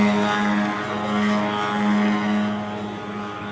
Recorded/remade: recorded